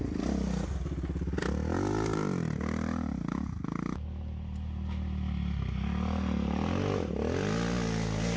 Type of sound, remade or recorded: recorded